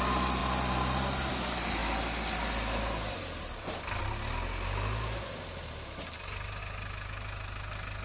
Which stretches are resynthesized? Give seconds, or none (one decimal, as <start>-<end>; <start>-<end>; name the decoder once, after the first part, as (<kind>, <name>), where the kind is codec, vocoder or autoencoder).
none